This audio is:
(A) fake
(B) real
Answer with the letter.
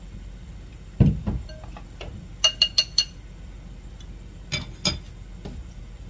B